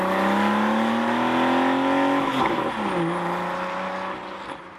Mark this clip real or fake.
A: real